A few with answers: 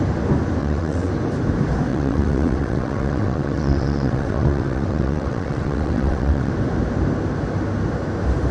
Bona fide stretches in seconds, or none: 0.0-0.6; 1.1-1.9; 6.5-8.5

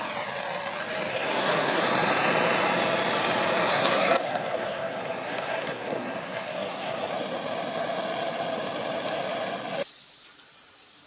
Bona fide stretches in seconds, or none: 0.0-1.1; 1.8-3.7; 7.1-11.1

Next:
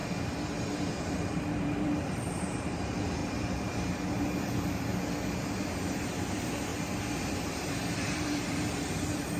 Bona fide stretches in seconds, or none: 0.0-1.0; 3.2-4.2; 4.9-6.0; 6.7-7.2

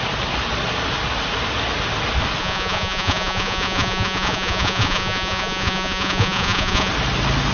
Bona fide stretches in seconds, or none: 0.0-2.4; 6.9-7.5

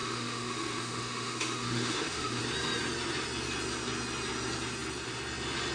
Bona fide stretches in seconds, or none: 2.4-5.7

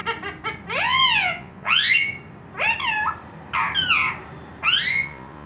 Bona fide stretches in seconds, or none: 0.0-0.8; 2.1-4.9